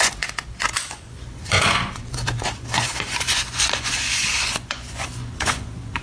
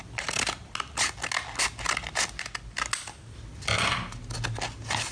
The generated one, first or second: first